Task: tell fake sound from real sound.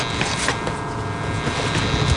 real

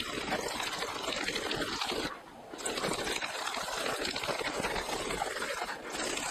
real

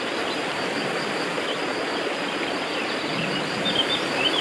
real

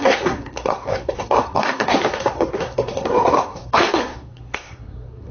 fake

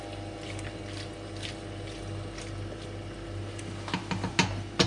real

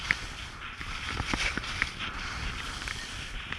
real